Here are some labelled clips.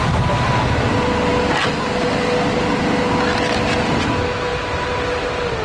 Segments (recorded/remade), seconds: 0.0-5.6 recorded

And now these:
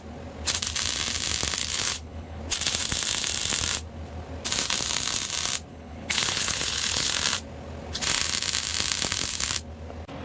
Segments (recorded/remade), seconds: 0.0-1.6 recorded; 1.6-2.4 remade; 2.4-5.7 recorded; 5.7-7.1 remade; 7.1-10.2 recorded

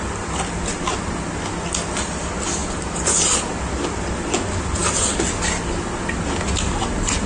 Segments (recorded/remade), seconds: 0.0-7.3 recorded

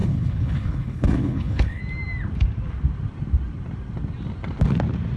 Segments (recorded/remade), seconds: 0.0-1.8 remade; 1.8-5.2 recorded

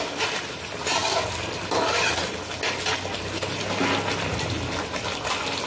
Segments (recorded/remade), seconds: 0.0-5.7 recorded